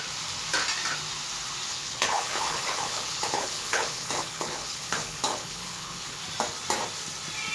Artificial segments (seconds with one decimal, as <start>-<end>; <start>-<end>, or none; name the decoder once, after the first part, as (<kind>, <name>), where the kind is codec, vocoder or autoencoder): 1.7-6.2 (codec, HILCodec)